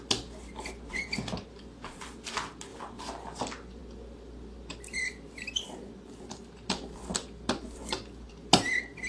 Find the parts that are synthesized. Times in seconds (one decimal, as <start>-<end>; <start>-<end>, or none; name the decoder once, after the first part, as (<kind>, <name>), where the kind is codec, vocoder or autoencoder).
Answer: none